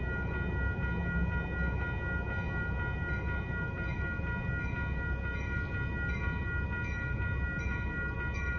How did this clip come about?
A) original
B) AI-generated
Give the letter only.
A